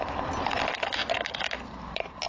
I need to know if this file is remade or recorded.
recorded